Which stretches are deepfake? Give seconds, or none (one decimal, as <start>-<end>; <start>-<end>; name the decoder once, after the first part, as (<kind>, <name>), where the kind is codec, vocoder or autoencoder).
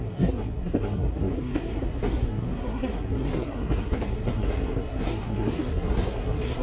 0.0-6.6 (codec, SNAC)